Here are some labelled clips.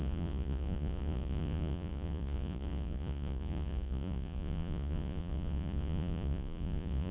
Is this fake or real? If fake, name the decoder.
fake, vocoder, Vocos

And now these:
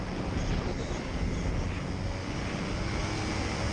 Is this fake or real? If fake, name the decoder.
real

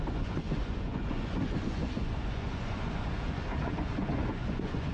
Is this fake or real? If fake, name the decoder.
fake, vocoder, Vocos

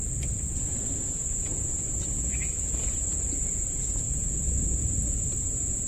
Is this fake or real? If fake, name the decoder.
fake, vocoder, Vocos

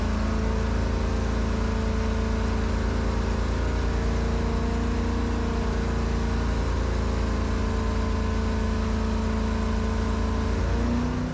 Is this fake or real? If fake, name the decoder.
real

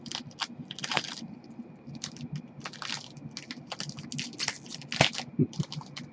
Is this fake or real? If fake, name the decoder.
real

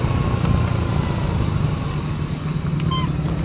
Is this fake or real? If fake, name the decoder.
real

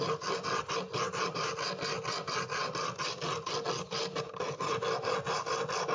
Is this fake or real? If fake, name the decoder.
real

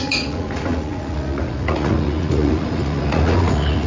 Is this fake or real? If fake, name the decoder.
fake, vocoder, Vocos